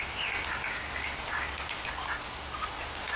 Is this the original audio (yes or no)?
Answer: yes